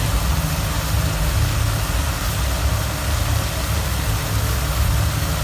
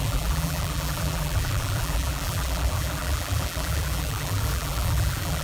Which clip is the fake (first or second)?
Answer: second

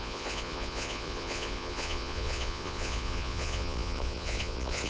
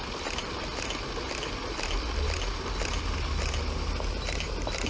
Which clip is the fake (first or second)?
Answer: first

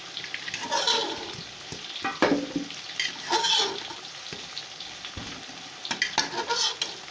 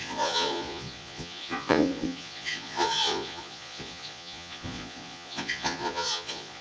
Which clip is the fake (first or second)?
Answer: second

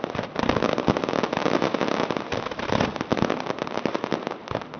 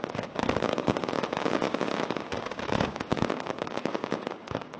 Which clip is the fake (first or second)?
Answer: second